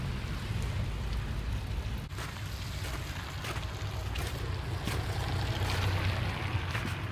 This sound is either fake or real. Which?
real